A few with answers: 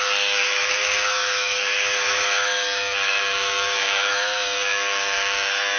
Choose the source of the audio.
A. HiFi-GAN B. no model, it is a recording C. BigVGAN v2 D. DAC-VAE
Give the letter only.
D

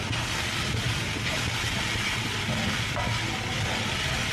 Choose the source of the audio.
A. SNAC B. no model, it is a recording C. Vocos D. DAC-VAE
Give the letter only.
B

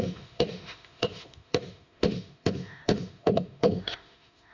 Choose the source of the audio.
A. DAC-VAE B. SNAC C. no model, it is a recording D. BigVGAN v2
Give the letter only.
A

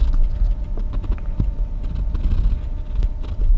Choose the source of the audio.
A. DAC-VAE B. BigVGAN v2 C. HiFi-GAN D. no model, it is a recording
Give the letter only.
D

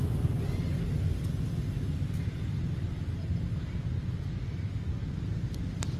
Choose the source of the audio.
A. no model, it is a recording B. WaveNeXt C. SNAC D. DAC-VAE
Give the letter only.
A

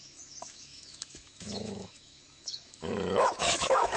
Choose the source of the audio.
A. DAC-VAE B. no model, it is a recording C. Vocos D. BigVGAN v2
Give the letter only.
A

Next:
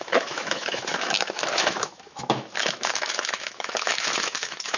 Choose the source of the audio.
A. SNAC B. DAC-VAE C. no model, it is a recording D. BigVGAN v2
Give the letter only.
B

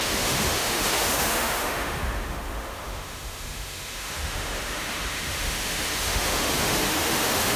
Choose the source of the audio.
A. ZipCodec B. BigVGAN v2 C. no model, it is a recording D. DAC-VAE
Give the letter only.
D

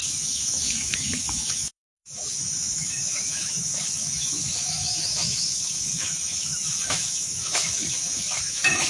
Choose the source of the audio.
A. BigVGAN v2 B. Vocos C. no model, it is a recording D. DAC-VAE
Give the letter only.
D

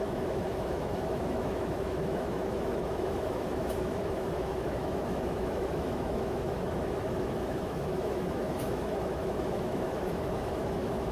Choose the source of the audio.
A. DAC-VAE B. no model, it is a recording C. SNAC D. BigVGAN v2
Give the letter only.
A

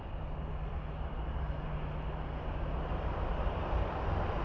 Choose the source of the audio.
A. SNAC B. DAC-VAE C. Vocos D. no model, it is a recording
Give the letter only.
D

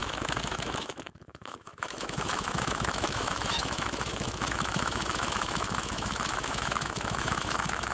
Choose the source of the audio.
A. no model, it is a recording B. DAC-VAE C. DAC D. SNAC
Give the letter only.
B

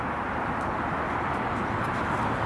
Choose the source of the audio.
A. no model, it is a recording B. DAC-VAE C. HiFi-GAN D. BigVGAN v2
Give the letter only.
A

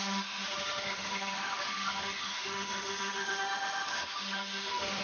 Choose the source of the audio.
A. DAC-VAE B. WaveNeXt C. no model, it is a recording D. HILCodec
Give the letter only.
A